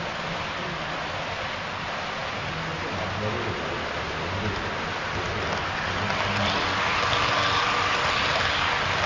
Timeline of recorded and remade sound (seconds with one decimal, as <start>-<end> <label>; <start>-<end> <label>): 0.0-9.1 recorded